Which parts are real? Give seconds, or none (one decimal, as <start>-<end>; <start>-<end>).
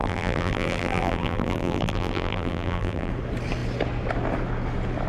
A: 3.1-5.1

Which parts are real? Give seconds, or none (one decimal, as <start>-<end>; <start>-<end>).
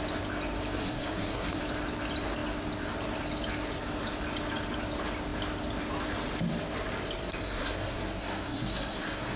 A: 0.0-0.8; 1.6-7.4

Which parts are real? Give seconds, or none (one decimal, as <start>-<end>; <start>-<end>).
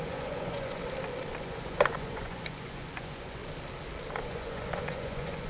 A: 0.8-1.4; 3.4-4.2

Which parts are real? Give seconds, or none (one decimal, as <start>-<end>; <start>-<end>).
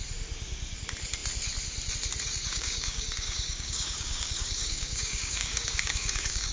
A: 0.0-2.5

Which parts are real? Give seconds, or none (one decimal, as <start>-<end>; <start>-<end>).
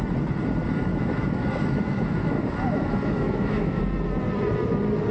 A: 0.0-0.9; 3.8-5.1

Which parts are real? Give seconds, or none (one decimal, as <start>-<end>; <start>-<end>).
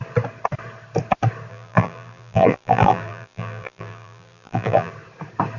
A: 0.0-1.5; 4.9-5.6